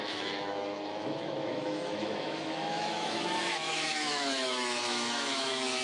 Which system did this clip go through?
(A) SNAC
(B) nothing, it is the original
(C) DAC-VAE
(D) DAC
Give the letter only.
C